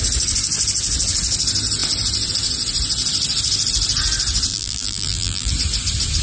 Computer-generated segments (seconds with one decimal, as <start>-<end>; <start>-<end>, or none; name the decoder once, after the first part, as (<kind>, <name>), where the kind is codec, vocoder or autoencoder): 4.5-5.5 (vocoder, BigVGAN v2)